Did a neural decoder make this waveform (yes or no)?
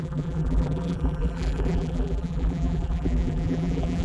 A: yes